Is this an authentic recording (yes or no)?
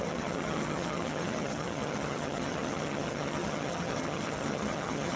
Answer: no